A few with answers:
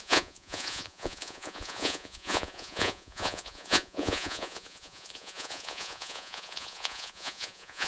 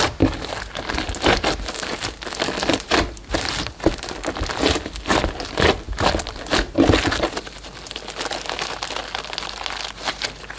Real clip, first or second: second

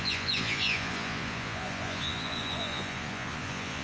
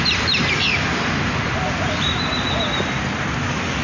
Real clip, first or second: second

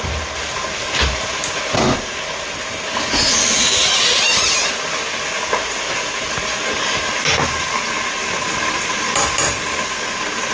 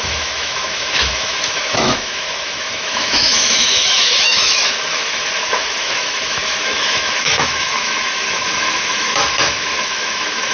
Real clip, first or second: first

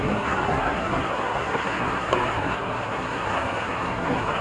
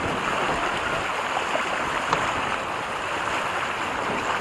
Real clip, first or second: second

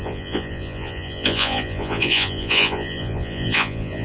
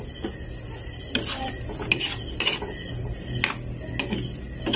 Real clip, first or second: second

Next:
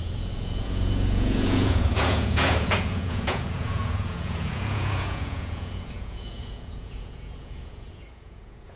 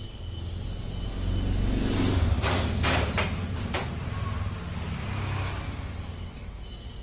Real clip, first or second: second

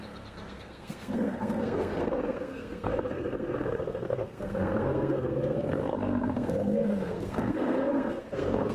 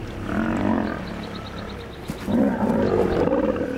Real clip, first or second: second